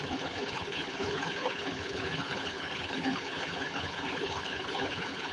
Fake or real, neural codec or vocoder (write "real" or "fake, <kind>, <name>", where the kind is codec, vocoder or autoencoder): fake, codec, HILCodec